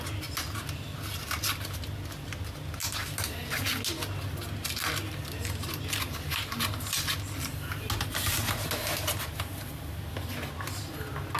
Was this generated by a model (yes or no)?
no